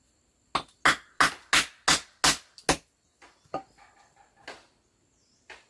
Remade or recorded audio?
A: recorded